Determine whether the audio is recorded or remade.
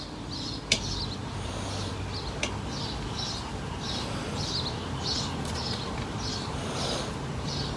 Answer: recorded